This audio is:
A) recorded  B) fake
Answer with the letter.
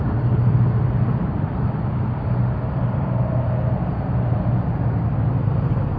A